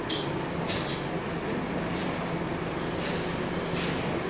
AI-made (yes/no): no